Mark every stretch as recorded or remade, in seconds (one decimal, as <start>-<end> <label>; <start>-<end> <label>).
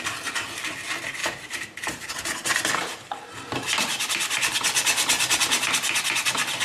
0.0-1.2 recorded; 1.2-2.1 remade; 2.1-6.6 recorded